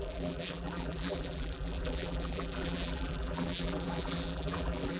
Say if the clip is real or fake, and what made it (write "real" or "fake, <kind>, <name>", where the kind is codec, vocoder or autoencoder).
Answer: fake, vocoder, BigVGAN v2